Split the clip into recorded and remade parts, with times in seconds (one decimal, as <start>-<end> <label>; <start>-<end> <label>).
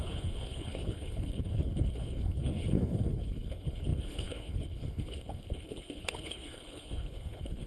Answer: 0.0-7.7 remade